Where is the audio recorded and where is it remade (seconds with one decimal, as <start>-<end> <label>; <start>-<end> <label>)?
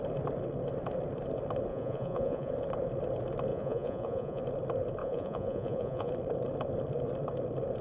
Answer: 0.0-1.7 recorded; 1.7-2.5 remade; 2.5-3.5 recorded; 3.5-4.4 remade; 4.4-5.0 recorded; 5.0-6.1 remade; 6.1-7.8 recorded